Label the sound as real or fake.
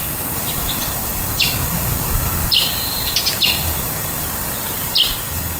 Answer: real